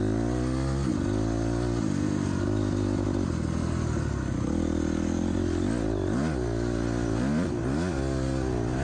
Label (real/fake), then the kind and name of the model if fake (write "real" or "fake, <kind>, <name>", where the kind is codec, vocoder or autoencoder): real